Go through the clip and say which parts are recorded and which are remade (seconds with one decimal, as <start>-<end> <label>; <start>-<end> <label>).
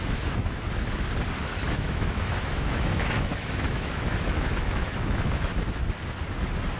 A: 0.0-0.7 remade; 0.7-1.4 recorded; 1.4-5.5 remade; 5.5-6.8 recorded